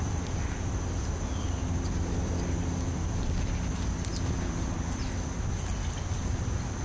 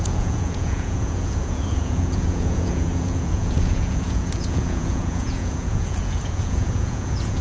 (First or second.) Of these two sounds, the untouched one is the first